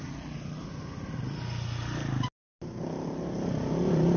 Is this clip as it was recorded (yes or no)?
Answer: yes